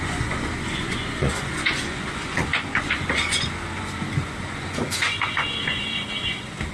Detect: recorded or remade remade